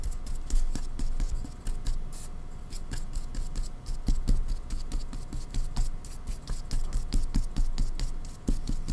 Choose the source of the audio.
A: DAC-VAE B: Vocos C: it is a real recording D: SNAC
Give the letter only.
C